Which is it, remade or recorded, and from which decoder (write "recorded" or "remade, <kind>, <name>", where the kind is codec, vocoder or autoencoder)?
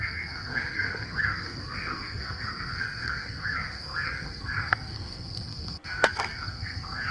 remade, codec, SNAC